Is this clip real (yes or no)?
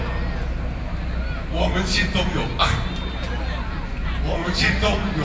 yes